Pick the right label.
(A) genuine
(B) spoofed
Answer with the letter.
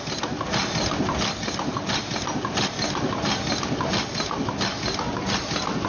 A